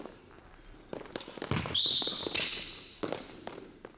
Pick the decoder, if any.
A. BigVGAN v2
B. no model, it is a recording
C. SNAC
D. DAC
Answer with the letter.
B